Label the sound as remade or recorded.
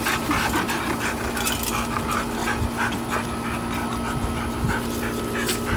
recorded